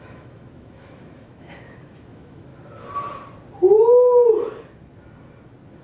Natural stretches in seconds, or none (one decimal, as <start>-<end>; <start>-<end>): 2.5-5.8